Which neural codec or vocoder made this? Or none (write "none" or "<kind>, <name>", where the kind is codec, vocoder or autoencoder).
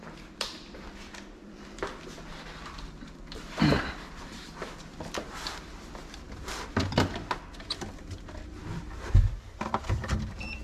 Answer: vocoder, BigVGAN v2